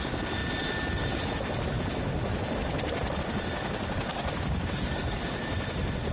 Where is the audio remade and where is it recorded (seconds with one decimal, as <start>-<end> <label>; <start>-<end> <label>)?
0.0-4.1 recorded; 4.1-5.4 remade; 5.4-6.1 recorded